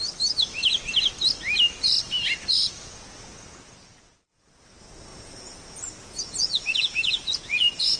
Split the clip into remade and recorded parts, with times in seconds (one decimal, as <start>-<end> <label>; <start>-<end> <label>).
0.0-2.6 recorded; 2.6-4.4 remade; 4.4-5.1 recorded; 5.1-8.0 remade